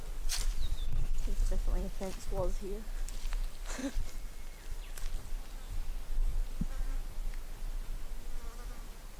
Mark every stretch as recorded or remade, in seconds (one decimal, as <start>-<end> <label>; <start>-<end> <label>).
0.0-0.5 recorded; 0.5-1.9 remade; 1.9-3.8 recorded; 3.8-5.3 remade; 5.3-9.2 recorded